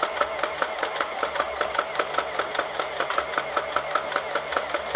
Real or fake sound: real